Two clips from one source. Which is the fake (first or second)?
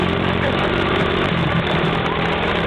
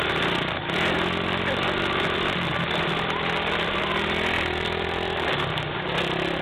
first